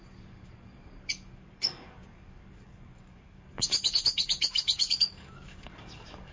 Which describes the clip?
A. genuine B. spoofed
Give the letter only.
B